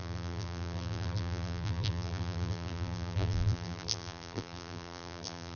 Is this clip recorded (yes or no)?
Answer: no